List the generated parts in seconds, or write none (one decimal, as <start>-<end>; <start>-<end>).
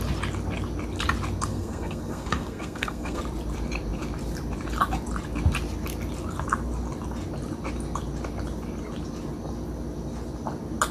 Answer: 1.5-3.2